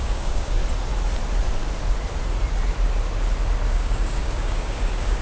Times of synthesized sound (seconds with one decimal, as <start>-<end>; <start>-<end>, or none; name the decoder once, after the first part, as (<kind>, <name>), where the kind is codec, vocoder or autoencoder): 0.0-0.6 (codec, DAC); 3.7-5.2